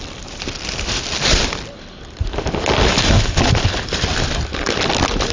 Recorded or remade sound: recorded